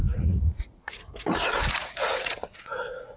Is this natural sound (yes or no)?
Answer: no